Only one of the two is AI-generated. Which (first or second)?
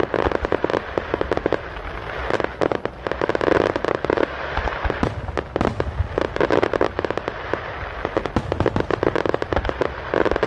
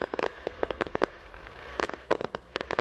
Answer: second